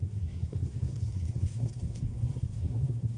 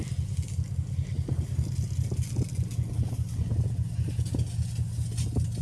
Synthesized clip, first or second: first